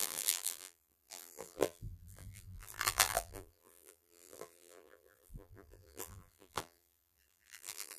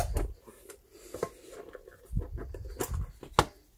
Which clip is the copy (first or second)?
first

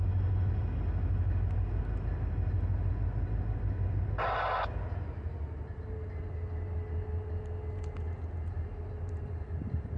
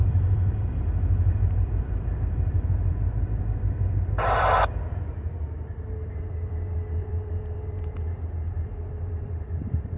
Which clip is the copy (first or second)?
second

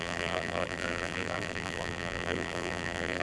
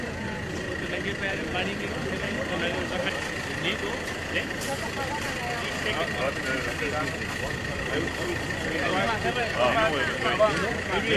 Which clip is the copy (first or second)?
first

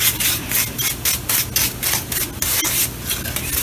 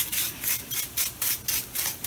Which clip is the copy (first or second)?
second